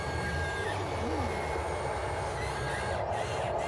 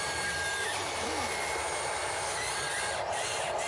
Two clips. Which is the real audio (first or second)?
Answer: first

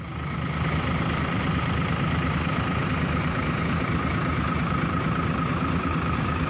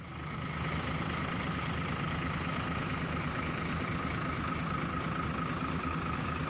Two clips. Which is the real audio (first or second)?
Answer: second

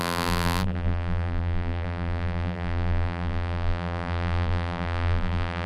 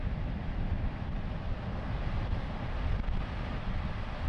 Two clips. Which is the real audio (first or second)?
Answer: second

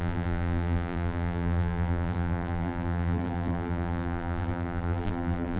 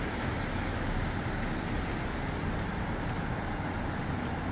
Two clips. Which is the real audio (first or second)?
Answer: second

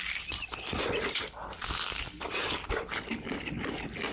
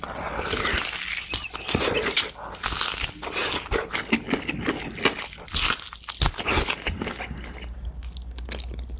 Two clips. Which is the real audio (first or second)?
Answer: second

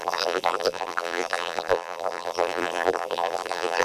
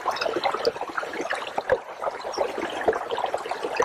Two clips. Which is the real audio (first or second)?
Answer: second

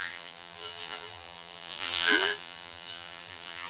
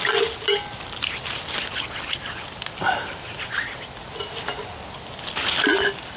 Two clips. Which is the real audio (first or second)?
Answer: second